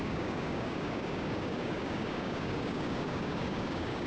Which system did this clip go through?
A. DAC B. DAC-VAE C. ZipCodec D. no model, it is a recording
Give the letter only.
A